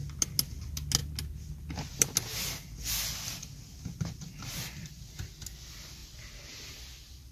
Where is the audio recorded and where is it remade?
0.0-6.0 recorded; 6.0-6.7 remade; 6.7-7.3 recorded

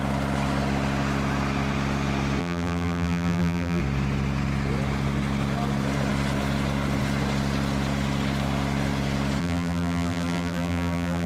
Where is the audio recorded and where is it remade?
0.0-2.4 recorded; 2.4-3.8 remade; 3.8-9.4 recorded; 9.4-11.3 remade

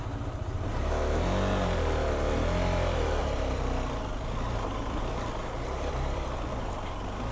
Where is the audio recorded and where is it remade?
0.0-3.2 recorded; 3.2-6.6 remade; 6.6-7.3 recorded

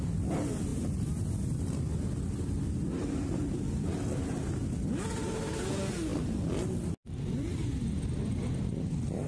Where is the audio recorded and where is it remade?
0.0-9.3 recorded